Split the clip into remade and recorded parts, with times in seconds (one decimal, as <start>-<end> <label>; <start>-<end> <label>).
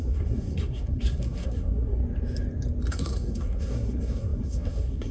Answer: 0.0-2.0 remade; 2.0-2.9 recorded; 2.9-5.1 remade